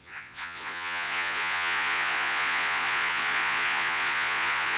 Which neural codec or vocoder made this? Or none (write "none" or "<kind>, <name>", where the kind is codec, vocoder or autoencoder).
vocoder, Vocos